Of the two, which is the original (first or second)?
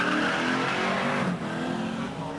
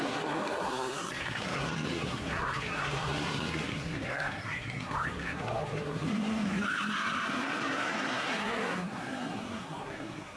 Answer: first